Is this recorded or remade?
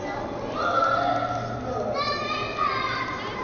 recorded